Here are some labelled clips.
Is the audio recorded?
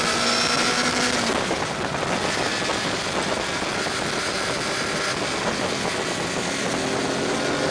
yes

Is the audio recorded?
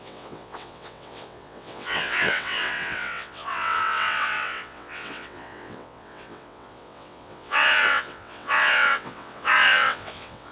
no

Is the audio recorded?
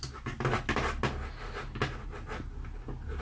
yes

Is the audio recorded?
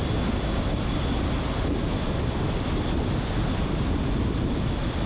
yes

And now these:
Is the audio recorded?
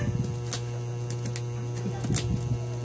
yes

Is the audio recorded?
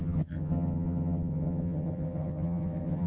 no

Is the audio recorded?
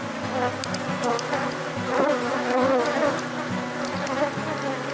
yes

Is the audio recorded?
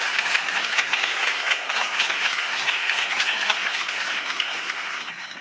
no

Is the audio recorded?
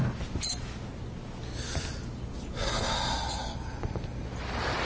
yes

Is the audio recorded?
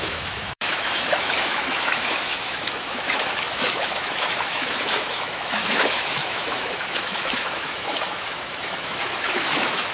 no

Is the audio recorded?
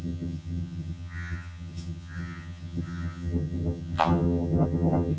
no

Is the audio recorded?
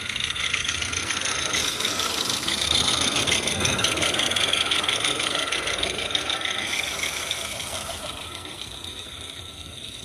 no